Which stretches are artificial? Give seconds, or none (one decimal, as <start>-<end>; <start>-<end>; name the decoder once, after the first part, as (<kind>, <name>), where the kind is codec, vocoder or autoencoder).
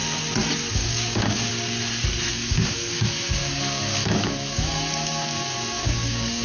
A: 0.7-1.5 (codec, DAC); 2.3-6.4